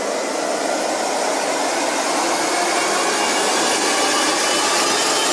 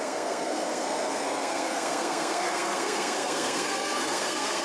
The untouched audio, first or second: first